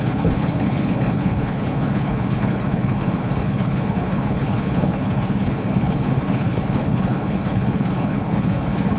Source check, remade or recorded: remade